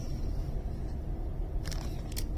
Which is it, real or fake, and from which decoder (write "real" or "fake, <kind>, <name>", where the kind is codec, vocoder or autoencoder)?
real